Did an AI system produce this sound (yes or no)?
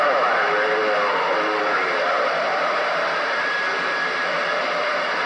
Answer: no